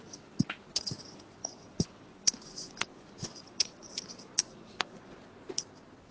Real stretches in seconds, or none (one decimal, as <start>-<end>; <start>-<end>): 0.0-1.4; 3.9-4.4; 5.2-6.1